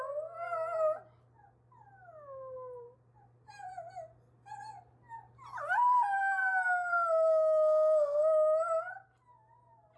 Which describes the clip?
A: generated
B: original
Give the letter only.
B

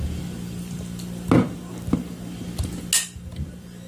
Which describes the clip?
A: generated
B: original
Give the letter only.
B